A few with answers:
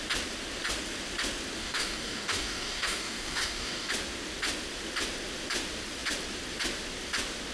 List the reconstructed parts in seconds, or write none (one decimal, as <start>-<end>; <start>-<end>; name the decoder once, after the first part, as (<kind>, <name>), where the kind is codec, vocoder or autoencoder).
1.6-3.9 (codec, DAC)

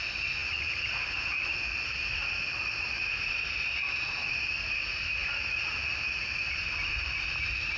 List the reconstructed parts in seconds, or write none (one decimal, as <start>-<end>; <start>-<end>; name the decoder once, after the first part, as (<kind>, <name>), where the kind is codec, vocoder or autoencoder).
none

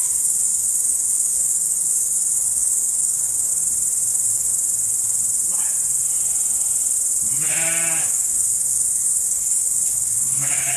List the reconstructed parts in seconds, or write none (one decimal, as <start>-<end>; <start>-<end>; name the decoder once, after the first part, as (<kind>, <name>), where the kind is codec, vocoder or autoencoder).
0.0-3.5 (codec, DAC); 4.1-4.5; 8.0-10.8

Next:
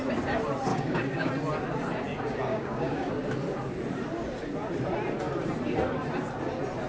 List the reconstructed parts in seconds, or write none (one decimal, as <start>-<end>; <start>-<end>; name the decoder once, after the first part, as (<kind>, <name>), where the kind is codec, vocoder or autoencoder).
0.7-1.3 (codec, DAC); 2.5-3.1

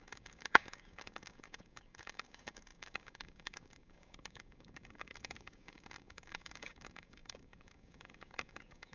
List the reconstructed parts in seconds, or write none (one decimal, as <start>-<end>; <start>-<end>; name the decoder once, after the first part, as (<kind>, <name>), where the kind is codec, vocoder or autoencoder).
0.0-8.9 (codec, DAC)